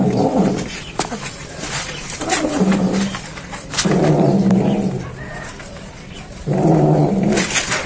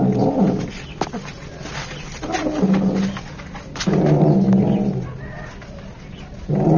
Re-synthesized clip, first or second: first